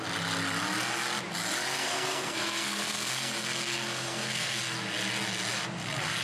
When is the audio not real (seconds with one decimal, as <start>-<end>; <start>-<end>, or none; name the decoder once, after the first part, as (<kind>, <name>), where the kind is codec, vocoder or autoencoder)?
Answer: 1.8-4.6 (codec, SNAC)